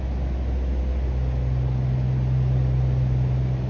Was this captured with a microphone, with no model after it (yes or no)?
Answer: yes